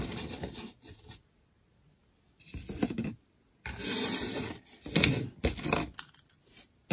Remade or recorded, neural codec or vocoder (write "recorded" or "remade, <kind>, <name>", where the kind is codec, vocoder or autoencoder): recorded